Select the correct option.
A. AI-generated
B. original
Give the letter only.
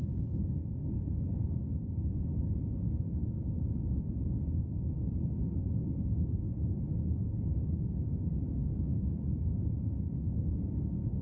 A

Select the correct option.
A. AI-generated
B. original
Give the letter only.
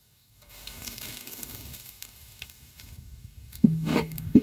A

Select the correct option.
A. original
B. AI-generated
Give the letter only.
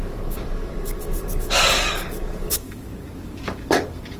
B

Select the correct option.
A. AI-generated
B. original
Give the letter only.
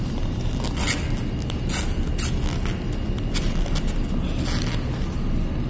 B